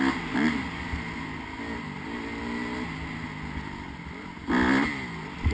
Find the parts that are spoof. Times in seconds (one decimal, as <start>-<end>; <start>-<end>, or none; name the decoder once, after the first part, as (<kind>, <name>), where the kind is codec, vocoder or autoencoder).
none